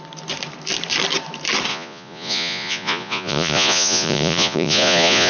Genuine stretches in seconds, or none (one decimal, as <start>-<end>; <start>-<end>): 0.0-1.7